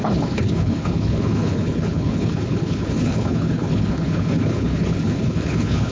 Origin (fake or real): fake